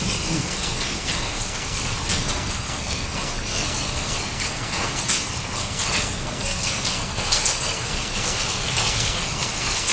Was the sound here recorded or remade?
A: remade